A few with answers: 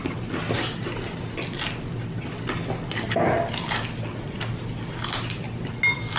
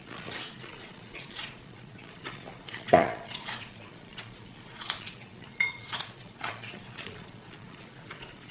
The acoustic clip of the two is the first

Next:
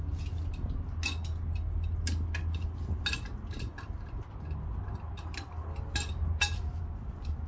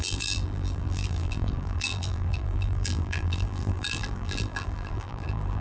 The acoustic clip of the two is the first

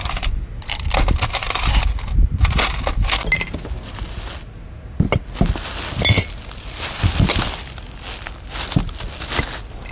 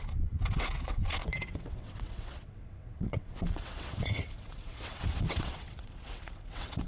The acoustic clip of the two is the first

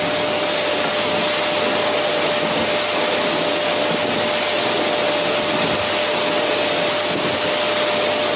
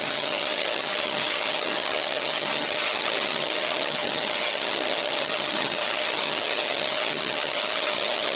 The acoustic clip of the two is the first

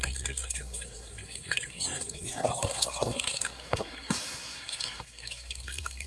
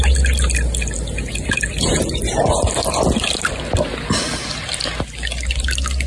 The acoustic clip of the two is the second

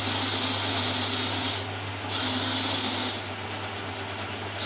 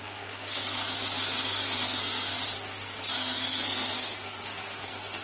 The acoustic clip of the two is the first